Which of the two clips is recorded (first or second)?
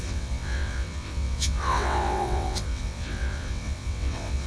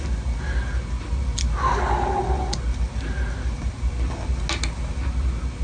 second